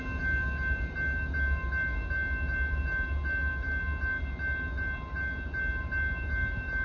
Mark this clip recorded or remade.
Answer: recorded